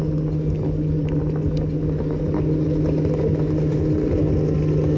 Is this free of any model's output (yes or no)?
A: yes